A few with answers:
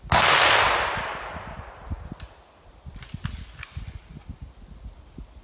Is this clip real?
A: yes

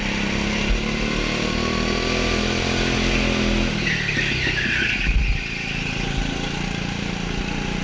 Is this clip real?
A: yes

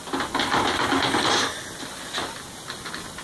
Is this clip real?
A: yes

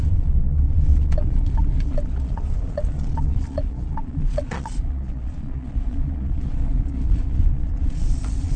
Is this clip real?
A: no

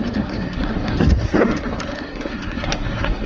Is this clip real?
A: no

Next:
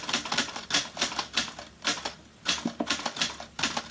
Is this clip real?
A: yes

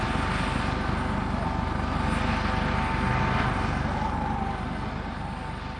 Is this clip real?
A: yes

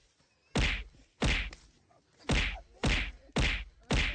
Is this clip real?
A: yes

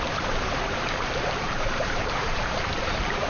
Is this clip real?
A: no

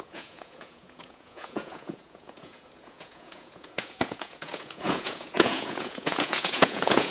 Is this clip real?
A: no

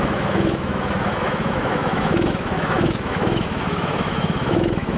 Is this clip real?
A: no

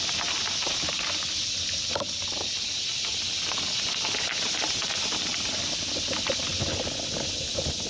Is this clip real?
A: yes